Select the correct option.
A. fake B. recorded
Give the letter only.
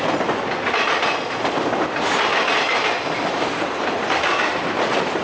B